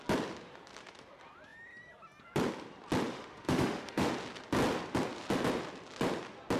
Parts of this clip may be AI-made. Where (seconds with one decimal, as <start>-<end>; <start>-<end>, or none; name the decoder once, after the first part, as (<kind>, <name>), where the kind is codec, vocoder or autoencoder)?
3.1-4.1 (autoencoder, DAC-VAE)